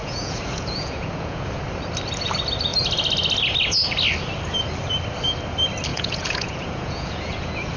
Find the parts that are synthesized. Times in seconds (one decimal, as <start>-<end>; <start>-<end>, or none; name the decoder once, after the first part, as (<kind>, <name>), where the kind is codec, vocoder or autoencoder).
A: 0.0-1.6 (vocoder, Vocos); 5.9-7.8